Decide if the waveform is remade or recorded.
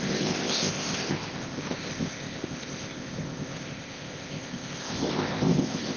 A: remade